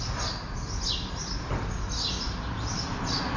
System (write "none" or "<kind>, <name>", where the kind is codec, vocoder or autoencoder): none